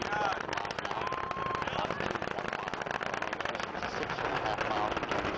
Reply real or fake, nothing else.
real